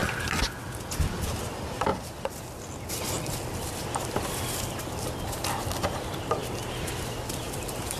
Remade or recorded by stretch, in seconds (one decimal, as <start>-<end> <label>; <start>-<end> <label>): 0.0-1.5 recorded; 1.5-6.4 remade; 6.4-7.0 recorded; 7.0-8.0 remade